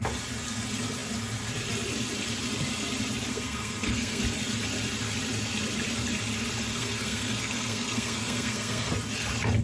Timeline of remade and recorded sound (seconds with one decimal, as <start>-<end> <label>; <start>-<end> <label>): 0.0-3.3 recorded; 3.3-4.2 remade; 4.2-6.7 recorded; 6.7-8.9 remade; 8.9-9.6 recorded